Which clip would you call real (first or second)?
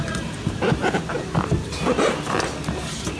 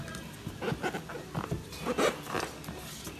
second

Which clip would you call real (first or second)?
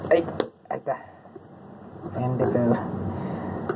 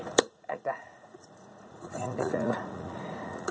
first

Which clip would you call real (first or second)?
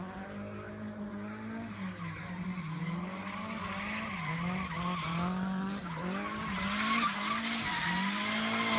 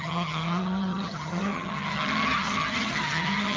first